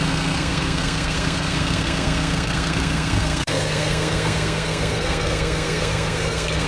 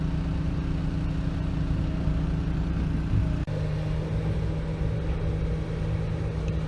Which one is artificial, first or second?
first